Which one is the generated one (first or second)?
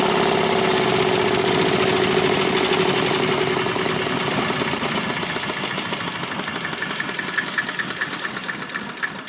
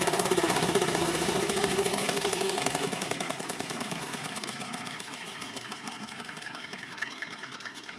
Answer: second